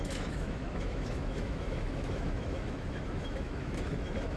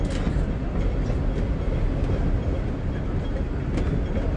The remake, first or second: first